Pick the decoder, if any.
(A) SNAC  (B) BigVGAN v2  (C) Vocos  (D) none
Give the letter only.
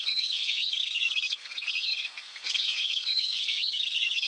A